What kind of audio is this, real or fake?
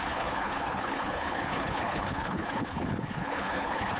fake